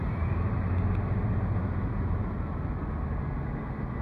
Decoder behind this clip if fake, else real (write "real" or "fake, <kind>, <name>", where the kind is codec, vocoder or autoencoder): real